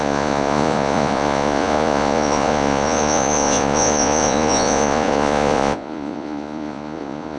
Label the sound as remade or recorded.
remade